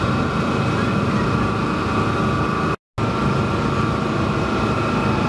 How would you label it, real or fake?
real